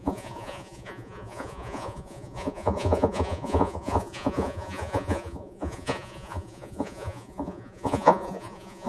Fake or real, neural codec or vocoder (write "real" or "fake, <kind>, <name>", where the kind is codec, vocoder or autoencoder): fake, vocoder, Vocos